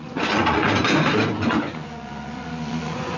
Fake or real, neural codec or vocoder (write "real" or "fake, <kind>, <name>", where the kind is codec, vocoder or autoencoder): fake, vocoder, Vocos